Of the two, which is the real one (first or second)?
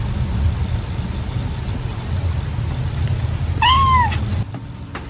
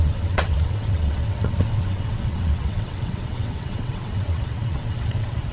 first